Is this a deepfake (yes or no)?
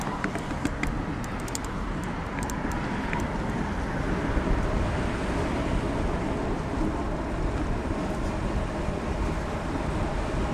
no